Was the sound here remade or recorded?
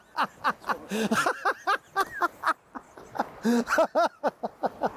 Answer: recorded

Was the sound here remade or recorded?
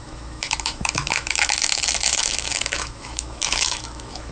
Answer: remade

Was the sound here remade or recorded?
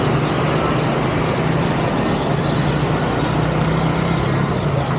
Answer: recorded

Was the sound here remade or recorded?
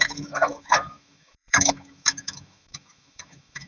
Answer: remade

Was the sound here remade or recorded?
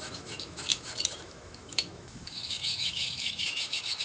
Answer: remade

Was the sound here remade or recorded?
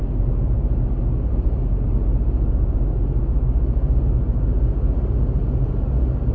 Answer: recorded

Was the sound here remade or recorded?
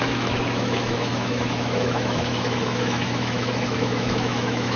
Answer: remade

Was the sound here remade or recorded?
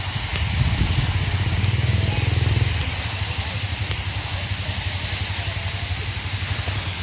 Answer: recorded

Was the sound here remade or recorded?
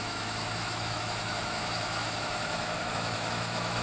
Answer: remade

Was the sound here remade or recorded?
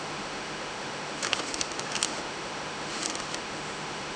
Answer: remade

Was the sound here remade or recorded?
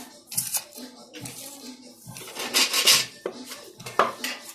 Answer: recorded